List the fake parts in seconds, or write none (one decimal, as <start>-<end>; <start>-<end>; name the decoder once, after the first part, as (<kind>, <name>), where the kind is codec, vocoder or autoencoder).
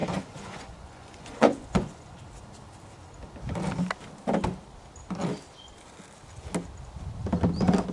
0.0-2.2 (vocoder, Vocos)